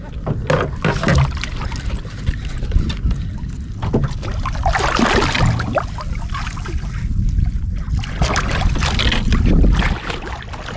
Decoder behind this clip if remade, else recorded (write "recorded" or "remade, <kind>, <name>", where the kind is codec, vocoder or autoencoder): recorded